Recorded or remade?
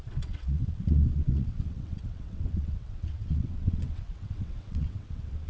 remade